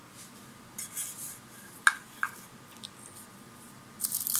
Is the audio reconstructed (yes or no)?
no